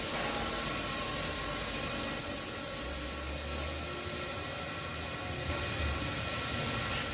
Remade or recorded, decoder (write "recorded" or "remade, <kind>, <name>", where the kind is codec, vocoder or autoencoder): recorded